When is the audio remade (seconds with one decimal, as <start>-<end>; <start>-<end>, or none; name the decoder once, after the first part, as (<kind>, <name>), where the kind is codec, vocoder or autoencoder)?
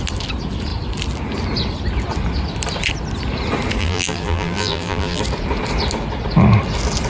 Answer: 3.8-5.2 (vocoder, BigVGAN v2)